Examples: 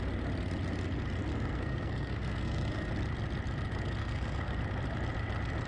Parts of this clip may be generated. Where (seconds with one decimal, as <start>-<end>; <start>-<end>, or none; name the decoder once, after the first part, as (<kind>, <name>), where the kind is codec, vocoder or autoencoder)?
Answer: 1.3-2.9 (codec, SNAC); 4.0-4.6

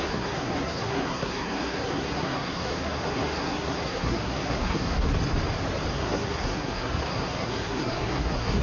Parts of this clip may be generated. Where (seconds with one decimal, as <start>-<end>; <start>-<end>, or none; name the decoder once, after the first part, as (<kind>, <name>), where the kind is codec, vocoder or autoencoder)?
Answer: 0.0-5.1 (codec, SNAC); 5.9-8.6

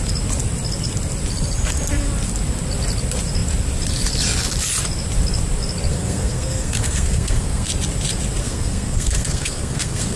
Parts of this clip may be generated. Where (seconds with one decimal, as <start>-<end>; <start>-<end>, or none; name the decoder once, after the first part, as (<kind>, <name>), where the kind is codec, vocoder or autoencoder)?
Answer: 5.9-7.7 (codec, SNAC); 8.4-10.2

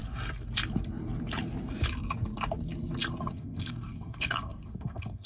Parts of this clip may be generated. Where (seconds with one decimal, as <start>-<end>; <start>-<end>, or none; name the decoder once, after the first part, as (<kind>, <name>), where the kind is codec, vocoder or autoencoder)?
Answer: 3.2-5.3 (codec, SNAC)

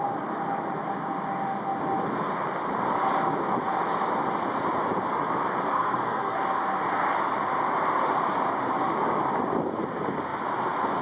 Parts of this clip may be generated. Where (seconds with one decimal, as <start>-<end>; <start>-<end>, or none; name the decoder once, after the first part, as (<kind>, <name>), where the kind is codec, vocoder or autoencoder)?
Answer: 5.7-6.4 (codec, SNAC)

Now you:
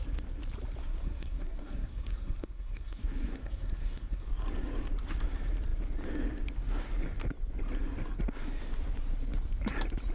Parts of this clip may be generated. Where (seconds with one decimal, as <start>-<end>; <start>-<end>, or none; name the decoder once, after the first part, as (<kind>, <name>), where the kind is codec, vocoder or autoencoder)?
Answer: 0.8-4.3 (codec, SNAC)